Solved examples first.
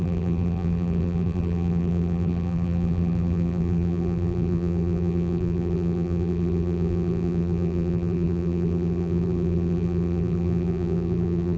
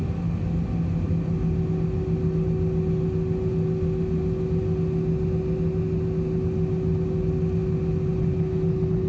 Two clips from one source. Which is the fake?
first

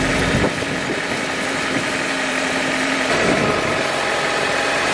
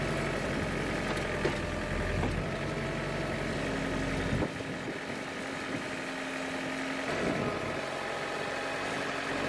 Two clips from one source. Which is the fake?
first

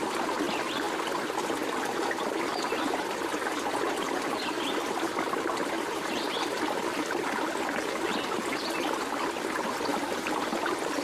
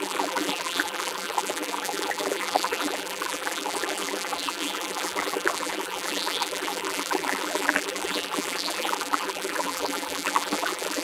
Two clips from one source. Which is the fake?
second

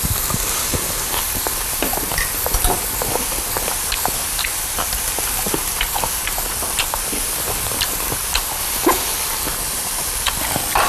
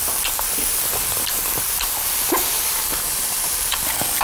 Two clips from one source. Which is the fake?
first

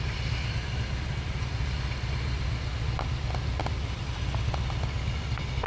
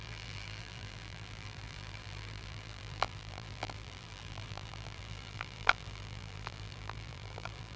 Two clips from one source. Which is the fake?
second